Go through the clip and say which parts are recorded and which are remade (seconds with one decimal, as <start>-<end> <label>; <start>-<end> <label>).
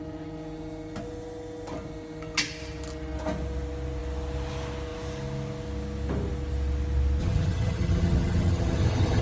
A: 0.0-7.2 recorded; 7.2-9.2 remade